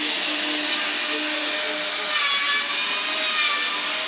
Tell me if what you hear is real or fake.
real